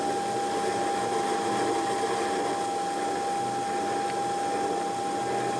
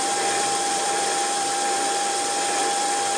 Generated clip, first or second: second